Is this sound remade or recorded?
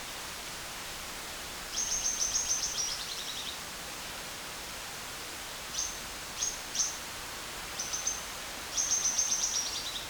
remade